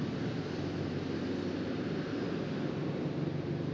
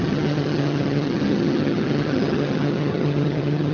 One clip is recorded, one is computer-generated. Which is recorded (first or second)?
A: first